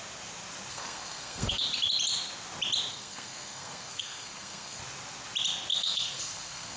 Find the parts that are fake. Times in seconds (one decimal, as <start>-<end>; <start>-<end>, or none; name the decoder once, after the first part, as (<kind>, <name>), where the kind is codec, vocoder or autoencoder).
0.7-1.6 (codec, SNAC); 2.9-4.8; 5.7-6.8